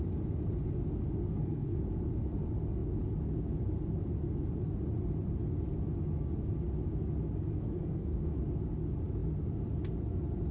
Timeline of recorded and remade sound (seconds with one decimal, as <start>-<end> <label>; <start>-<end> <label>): 0.0-1.3 recorded; 1.3-1.8 remade; 1.8-7.6 recorded; 7.6-8.4 remade; 8.4-10.5 recorded